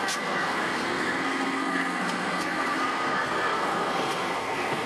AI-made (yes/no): yes